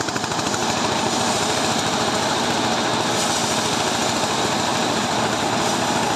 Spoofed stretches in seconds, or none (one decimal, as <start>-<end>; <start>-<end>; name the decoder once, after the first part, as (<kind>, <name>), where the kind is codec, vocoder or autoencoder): 0.6-2.5 (vocoder, BigVGAN v2); 4.7-5.4